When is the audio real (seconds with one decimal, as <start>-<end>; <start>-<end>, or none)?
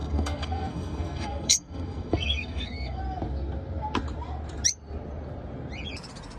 3.0-6.4